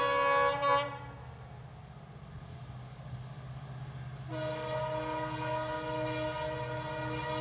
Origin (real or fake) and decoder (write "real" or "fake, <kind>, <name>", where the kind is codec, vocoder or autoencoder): real